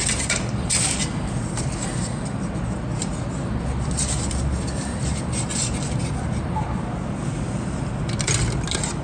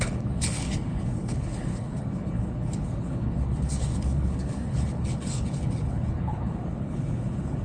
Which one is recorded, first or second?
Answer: first